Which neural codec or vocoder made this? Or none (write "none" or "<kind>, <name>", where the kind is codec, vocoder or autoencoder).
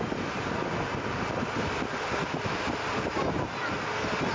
none